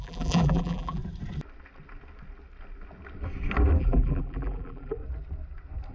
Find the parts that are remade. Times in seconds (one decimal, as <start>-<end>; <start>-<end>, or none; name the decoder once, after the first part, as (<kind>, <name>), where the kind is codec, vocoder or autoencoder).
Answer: 0.0-1.0 (vocoder, BigVGAN v2); 3.8-5.0